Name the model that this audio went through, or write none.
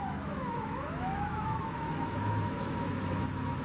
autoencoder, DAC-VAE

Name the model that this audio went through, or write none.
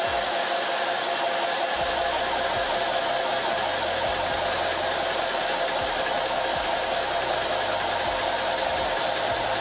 none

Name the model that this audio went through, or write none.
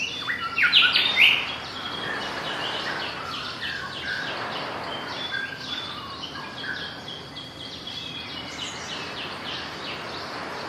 vocoder, BigVGAN v2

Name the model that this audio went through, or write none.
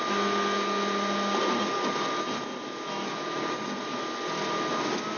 none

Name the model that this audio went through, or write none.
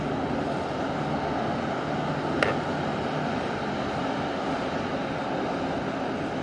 none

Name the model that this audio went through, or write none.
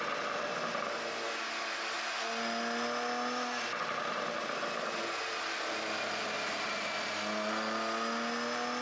none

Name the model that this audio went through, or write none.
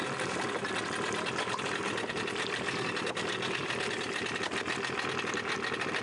none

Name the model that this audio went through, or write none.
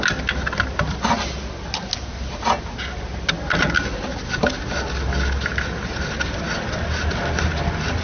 none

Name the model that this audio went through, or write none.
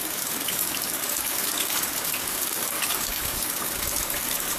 codec, DAC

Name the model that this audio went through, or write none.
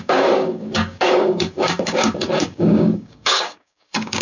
codec, DAC